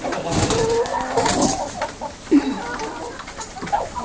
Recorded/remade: recorded